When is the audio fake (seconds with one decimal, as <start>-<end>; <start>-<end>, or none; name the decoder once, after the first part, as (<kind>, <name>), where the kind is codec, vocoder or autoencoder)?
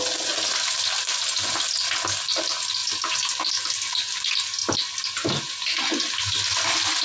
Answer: none